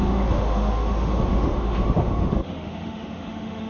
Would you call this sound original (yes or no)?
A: no